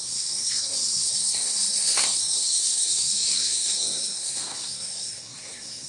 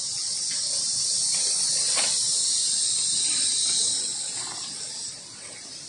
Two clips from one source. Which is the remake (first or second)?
first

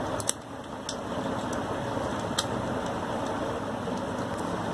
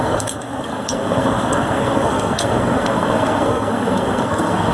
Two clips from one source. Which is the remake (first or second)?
second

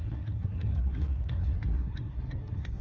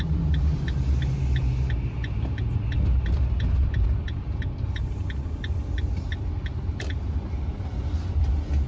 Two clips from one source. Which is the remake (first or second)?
first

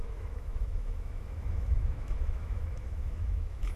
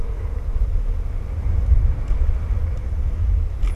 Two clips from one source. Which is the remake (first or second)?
first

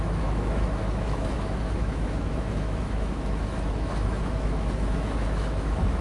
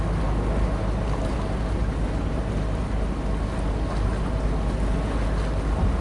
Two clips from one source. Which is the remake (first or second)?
first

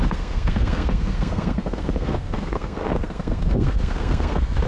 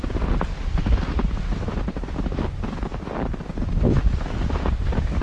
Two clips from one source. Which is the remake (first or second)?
first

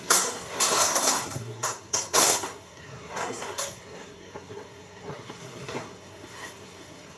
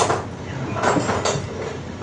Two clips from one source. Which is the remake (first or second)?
first